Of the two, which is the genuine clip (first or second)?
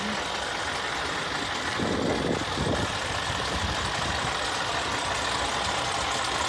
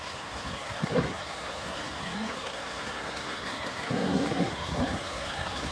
first